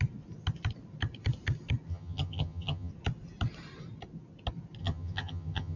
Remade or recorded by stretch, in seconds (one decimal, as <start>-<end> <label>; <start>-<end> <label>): 0.0-1.9 recorded; 1.9-2.9 remade; 2.9-4.8 recorded; 4.8-5.8 remade